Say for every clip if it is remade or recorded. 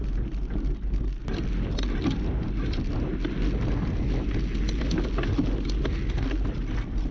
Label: recorded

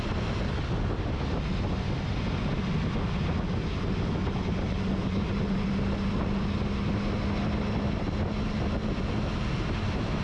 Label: recorded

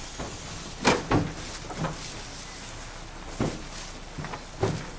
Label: recorded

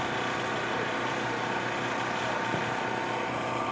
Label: recorded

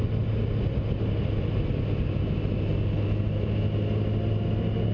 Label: recorded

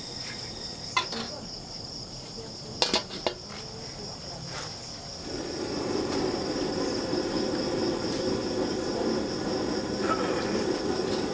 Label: recorded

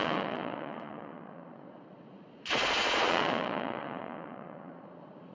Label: remade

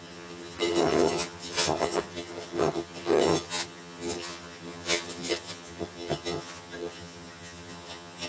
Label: remade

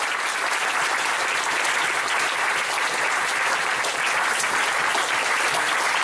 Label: recorded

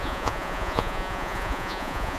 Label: remade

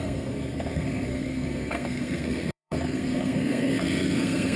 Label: remade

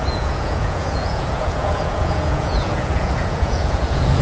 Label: remade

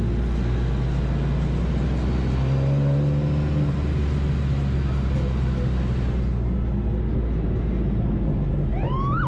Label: recorded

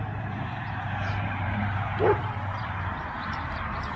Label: remade